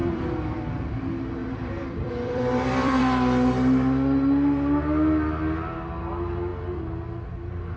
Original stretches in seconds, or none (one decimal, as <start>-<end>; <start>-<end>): 0.8-1.4; 3.0-7.8